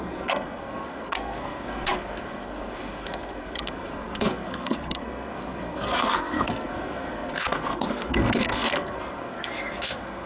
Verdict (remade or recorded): remade